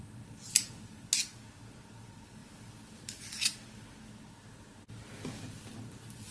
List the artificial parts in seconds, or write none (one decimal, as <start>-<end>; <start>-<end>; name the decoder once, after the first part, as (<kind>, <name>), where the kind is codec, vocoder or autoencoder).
none